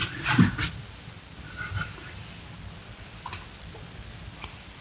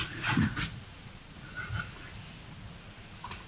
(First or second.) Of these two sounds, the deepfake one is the second